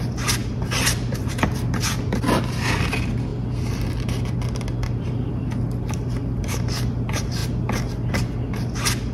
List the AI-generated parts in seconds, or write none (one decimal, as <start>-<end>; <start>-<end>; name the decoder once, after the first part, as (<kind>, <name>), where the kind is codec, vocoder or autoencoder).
0.4-2.4 (vocoder, BigVGAN v2)